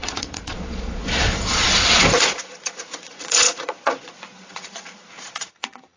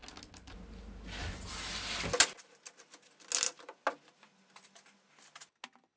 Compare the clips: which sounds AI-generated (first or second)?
first